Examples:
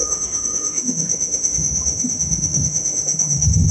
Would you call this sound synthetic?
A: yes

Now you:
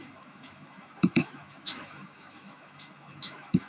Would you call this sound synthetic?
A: yes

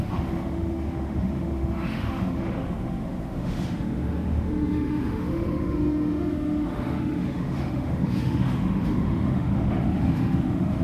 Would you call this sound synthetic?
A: yes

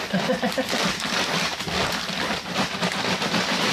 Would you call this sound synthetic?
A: no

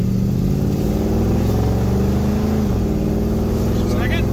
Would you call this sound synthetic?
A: no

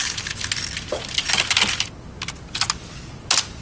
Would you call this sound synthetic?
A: no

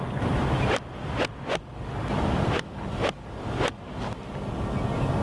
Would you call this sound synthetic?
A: no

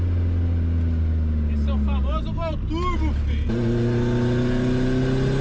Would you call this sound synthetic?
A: no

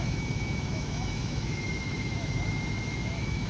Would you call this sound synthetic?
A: yes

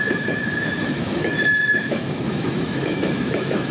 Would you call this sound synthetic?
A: yes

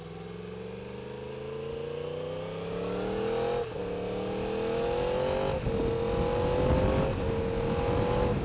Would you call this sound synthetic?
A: no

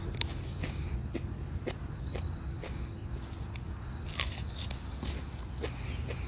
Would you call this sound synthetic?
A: no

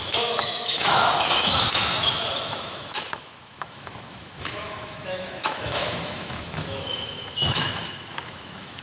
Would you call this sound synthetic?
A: yes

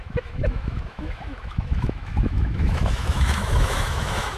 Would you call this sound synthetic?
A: yes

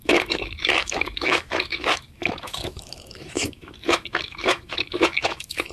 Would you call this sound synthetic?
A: yes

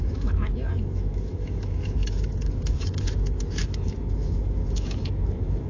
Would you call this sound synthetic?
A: yes